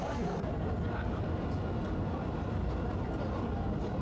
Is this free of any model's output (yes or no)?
yes